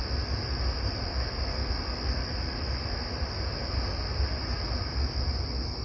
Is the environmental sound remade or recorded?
recorded